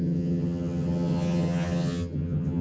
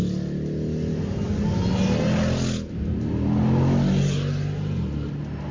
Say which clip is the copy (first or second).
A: first